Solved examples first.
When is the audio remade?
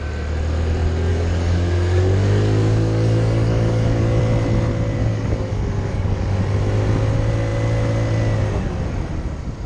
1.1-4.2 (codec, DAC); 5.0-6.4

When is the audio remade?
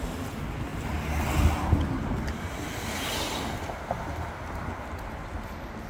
none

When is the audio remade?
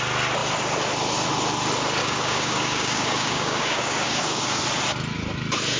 2.0-4.6 (codec, DAC)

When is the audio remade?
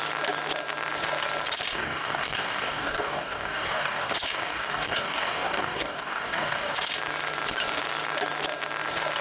1.7-6.9 (codec, DAC)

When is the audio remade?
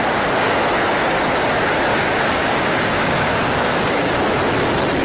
0.0-0.6 (codec, DAC); 1.9-4.1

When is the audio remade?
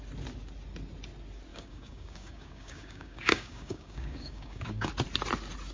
1.5-4.9 (codec, DAC)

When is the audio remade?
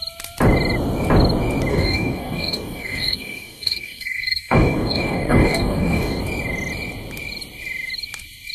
1.7-6.2 (codec, DAC)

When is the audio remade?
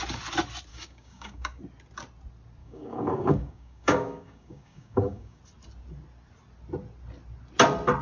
0.7-1.6 (codec, DAC); 2.6-5.4